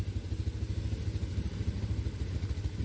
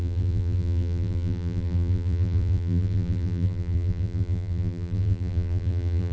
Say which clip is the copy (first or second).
second